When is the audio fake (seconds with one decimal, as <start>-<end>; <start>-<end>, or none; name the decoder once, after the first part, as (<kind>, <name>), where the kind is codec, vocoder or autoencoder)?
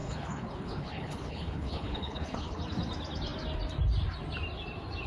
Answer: 0.0-2.6 (codec, HILCodec)